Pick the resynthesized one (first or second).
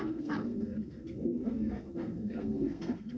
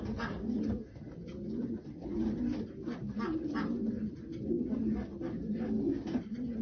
first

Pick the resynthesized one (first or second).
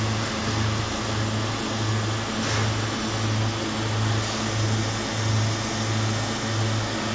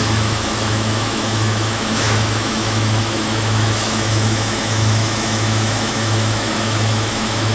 second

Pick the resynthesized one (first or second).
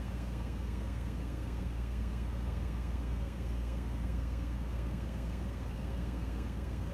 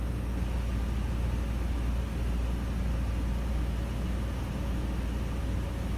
first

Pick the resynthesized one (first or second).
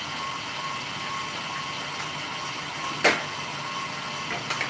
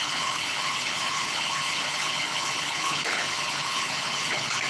second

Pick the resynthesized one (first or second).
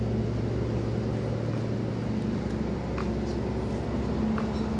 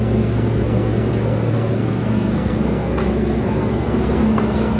second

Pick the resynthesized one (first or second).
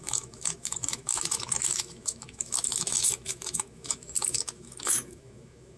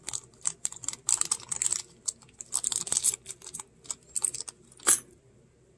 first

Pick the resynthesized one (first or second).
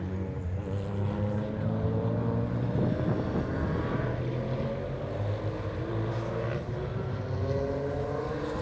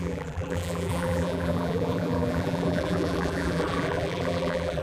second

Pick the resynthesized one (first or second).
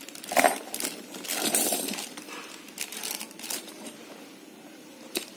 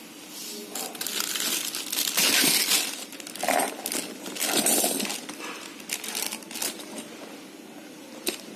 first